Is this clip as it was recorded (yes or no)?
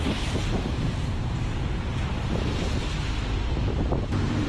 no